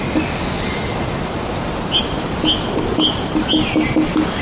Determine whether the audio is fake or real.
real